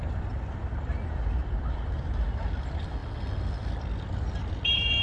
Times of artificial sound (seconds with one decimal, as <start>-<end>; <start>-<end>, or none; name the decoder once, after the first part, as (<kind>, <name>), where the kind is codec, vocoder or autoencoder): 1.4-2.4 (vocoder, BigVGAN v2)